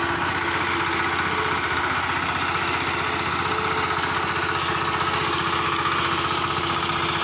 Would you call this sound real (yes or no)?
yes